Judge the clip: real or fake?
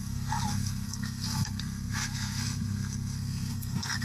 fake